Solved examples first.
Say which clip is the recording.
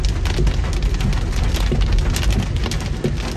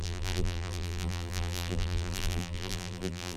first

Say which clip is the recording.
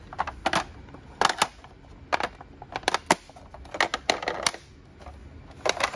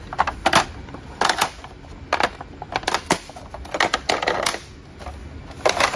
first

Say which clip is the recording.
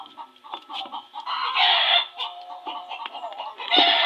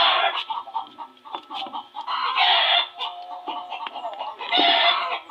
second